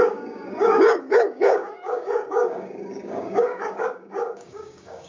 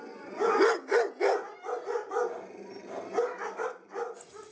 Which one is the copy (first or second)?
first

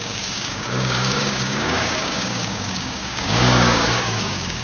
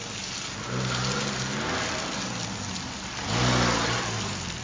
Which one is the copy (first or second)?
first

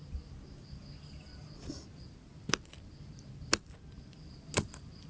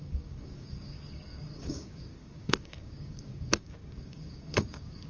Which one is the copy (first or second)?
second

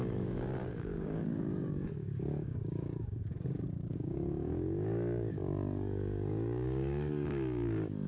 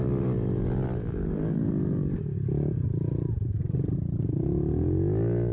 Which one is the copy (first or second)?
first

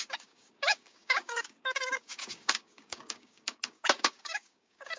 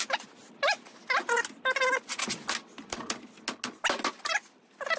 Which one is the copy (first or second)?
first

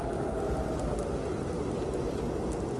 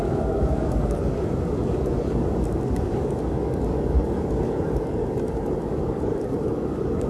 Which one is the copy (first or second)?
second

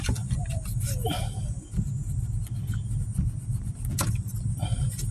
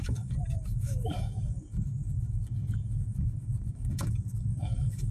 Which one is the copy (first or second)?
second